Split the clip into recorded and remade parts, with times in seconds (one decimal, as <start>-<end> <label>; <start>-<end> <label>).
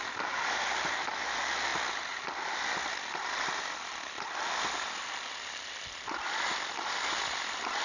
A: 0.0-7.8 recorded